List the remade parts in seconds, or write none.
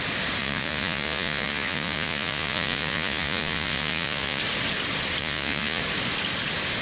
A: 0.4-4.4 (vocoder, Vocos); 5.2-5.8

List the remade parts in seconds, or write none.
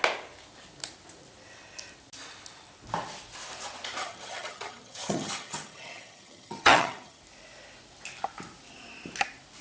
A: 4.0-7.2 (vocoder, HiFi-GAN)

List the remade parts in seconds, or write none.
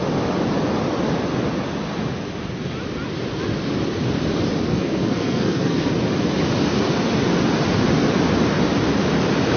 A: 4.7-5.9 (codec, SNAC)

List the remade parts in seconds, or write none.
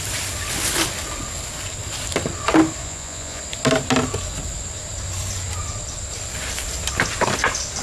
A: 2.8-3.4 (vocoder, Vocos)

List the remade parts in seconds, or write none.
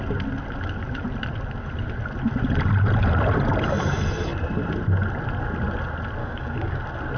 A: 6.2-6.8 (codec, DAC)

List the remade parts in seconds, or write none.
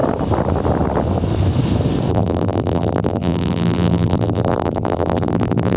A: 2.1-5.8 (vocoder, BigVGAN v2)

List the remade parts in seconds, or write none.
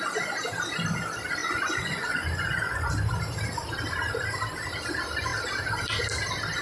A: 1.4-2.9 (vocoder, Vocos)